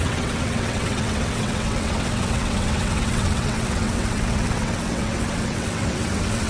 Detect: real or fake fake